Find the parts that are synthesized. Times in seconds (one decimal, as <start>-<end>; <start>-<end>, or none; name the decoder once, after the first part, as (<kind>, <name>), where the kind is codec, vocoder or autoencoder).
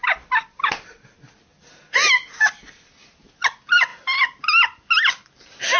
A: none